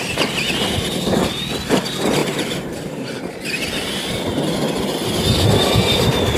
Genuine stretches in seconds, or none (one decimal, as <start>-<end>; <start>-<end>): 0.0-2.2; 3.6-6.4